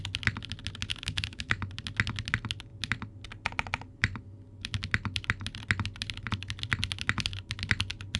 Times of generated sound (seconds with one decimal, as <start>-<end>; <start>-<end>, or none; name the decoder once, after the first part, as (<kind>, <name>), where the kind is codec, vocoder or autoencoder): 0.9-1.6 (autoencoder, DAC-VAE)

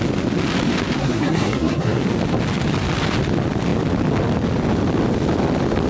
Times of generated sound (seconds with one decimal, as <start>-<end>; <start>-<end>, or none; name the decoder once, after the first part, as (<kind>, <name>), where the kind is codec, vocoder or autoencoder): 1.0-2.0 (codec, SNAC)

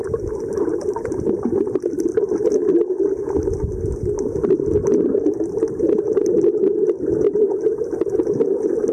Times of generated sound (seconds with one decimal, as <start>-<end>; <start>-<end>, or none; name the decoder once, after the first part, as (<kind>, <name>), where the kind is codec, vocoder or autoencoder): none

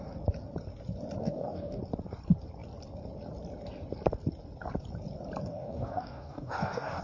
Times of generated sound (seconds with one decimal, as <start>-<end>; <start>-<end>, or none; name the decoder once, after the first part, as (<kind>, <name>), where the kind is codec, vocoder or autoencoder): 1.2-1.8 (codec, DAC); 5.5-7.0

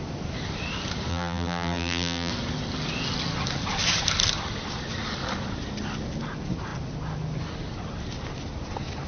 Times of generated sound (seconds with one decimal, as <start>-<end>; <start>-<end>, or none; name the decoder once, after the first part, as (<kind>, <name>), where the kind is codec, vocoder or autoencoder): 1.1-2.3 (vocoder, BigVGAN v2)